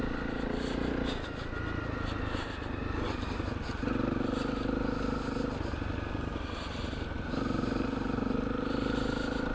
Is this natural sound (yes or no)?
yes